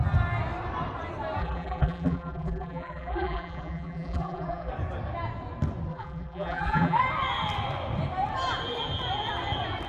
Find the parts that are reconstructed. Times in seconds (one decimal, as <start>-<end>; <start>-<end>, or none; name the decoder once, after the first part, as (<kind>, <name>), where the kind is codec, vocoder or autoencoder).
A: 1.4-4.7 (vocoder, BigVGAN v2); 5.9-7.0